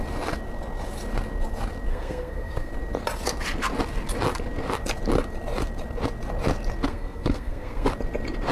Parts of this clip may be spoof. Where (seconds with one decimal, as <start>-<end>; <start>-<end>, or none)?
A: 1.9-2.7; 6.9-7.9